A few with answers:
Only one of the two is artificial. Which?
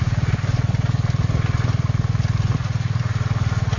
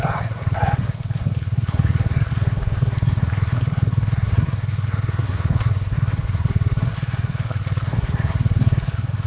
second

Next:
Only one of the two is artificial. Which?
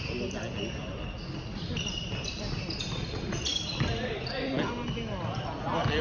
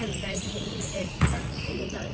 second